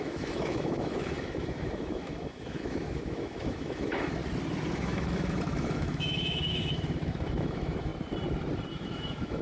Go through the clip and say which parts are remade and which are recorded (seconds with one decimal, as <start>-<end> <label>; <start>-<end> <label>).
0.0-4.2 remade; 4.2-4.7 recorded; 4.7-7.9 remade; 7.9-8.7 recorded; 8.7-9.4 remade